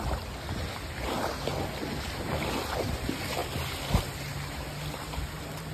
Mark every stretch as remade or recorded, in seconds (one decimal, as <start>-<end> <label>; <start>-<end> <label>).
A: 0.0-5.7 recorded